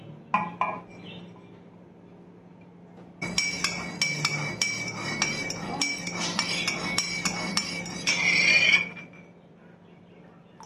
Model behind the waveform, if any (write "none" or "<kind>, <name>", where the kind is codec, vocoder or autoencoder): none